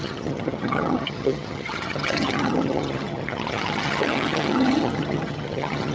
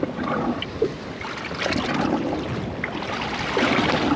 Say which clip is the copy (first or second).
first